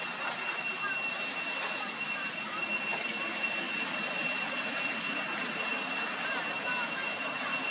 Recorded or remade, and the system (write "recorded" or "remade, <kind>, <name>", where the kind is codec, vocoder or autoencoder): recorded